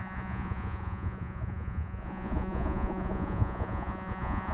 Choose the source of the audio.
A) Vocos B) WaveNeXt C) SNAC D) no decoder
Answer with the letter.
A